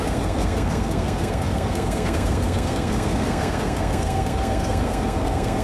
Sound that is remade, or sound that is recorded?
remade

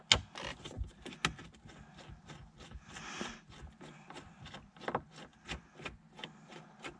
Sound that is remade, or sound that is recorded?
recorded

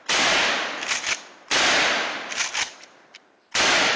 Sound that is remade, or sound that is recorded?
recorded